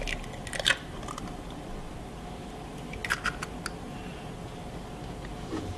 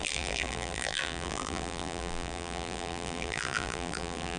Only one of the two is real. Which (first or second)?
first